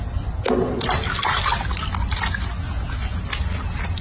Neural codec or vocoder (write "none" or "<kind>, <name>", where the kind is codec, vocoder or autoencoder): none